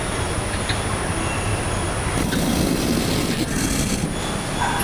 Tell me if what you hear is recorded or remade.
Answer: recorded